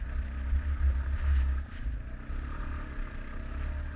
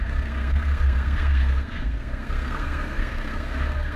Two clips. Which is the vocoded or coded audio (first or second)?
second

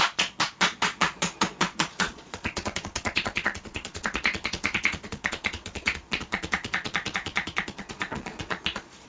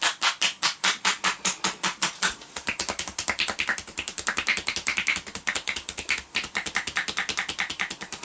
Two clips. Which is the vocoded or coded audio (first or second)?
first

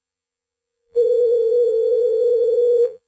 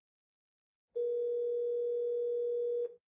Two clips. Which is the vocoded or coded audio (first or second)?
first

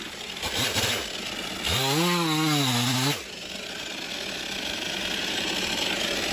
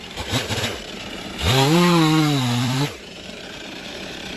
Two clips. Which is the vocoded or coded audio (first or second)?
second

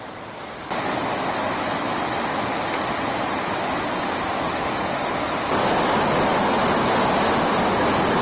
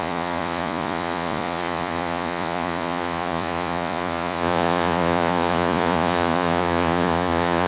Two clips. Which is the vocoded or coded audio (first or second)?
second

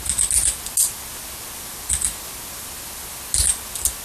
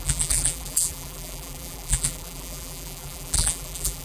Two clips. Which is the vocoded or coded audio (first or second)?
second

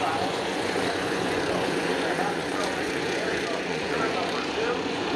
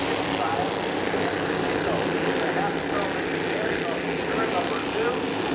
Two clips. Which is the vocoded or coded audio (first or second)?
first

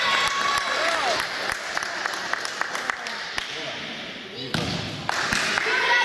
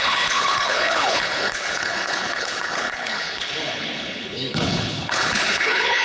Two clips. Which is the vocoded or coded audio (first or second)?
second